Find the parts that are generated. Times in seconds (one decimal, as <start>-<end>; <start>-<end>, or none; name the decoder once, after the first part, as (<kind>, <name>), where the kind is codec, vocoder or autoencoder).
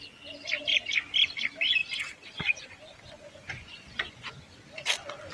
1.8-4.4 (vocoder, Vocos)